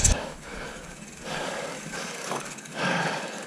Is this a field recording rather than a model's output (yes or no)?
no